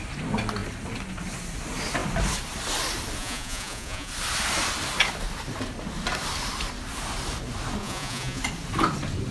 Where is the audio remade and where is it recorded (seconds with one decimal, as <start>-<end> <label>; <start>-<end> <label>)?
0.0-3.2 recorded; 3.2-4.1 remade; 4.1-7.8 recorded; 7.8-8.4 remade; 8.4-9.3 recorded